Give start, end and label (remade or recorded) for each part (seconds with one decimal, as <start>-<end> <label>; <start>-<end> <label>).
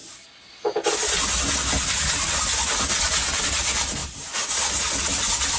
0.0-5.6 recorded